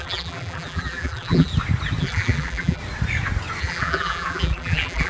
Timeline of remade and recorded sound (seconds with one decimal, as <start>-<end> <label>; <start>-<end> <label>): 0.0-1.5 remade; 1.5-2.0 recorded; 2.0-2.8 remade; 2.8-3.6 recorded; 3.6-5.1 remade